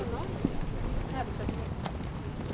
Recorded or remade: remade